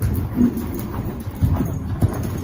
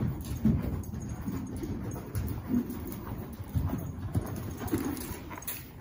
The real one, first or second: first